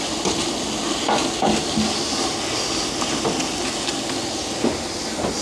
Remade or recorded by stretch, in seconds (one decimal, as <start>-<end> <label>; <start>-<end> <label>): 0.0-5.4 recorded